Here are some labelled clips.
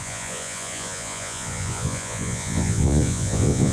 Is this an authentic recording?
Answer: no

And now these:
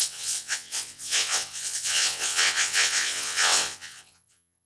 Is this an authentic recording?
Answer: no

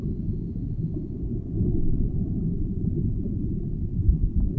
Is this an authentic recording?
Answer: no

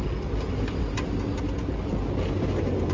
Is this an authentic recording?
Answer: yes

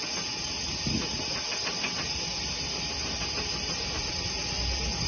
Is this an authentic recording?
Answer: yes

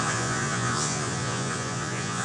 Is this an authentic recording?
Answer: no